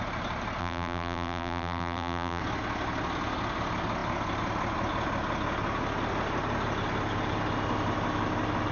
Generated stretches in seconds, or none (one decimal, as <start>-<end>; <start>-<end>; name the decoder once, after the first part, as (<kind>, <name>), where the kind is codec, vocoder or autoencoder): 0.6-2.4 (vocoder, BigVGAN v2)